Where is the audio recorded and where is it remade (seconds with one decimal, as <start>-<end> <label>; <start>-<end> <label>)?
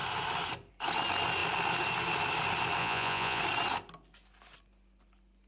0.0-2.8 recorded; 2.8-3.4 remade; 3.4-5.5 recorded